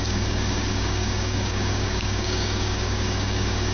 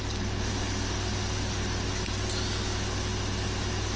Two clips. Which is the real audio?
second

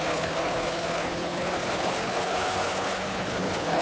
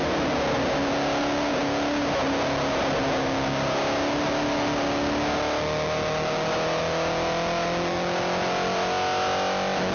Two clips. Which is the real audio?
second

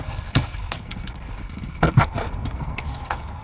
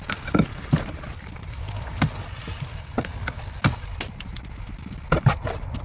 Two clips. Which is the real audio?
second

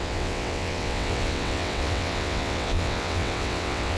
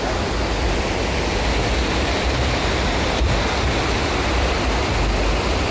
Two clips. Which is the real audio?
second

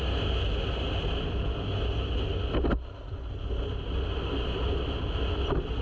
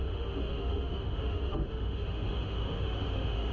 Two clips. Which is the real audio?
first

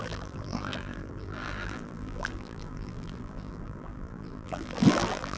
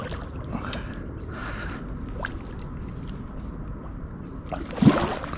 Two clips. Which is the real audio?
second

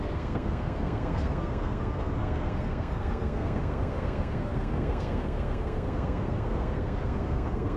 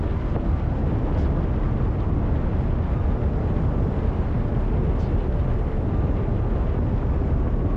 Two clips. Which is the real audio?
second